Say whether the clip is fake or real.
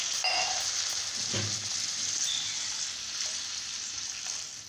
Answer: real